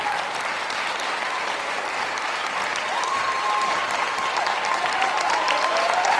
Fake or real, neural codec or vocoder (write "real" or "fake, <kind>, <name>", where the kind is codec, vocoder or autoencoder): real